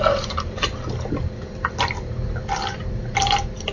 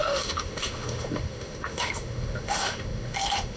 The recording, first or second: first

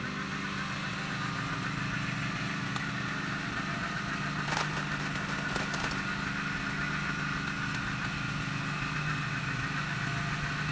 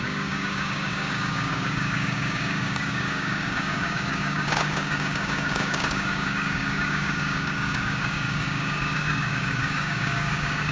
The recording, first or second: first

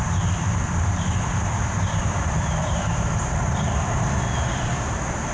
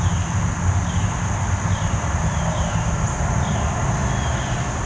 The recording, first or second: second